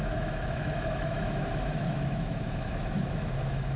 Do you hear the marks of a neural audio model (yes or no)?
yes